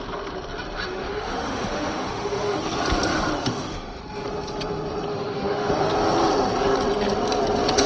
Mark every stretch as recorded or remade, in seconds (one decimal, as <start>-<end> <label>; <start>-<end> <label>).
0.0-1.0 recorded; 1.0-2.6 remade; 2.6-3.4 recorded; 3.4-4.0 remade; 4.0-5.1 recorded; 5.1-5.7 remade; 5.7-7.9 recorded